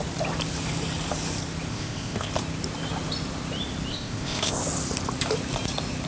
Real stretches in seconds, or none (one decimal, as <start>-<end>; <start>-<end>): 0.0-1.7; 2.3-3.9; 4.6-6.1